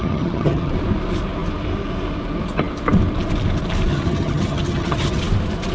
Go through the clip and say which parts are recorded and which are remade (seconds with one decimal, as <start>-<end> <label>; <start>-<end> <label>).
0.0-0.7 remade; 0.7-3.9 recorded; 3.9-5.2 remade; 5.2-5.7 recorded